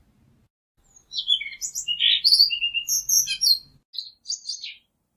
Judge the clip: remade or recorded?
recorded